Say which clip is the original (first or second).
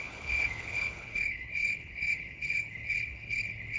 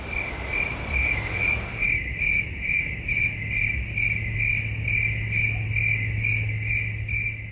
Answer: second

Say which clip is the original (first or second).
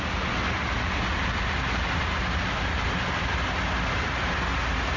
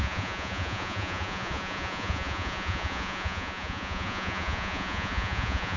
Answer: first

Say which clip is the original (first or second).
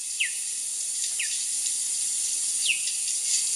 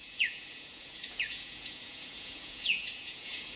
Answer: first